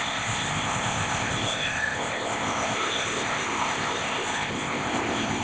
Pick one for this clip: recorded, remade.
remade